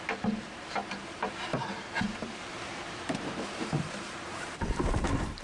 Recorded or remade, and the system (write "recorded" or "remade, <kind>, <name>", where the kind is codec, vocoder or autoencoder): remade, vocoder, BigVGAN v2